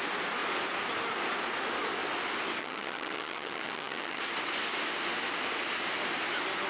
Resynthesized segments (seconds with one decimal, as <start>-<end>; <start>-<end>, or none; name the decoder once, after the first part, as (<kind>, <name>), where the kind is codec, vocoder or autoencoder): 2.6-4.2 (vocoder, HiFi-GAN)